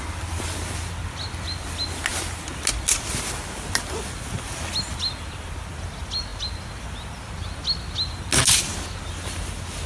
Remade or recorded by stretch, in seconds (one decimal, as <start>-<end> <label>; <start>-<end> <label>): 0.0-9.9 recorded